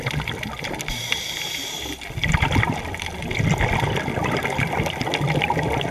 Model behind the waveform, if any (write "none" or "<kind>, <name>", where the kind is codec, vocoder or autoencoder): none